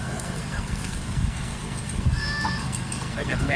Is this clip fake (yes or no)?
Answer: yes